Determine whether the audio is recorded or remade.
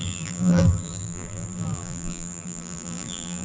remade